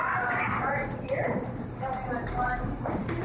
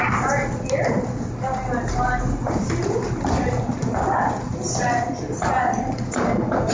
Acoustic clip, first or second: second